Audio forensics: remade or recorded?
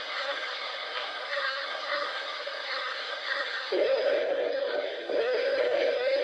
remade